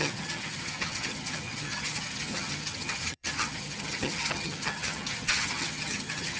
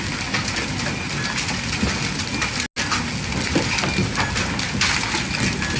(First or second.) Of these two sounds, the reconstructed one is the first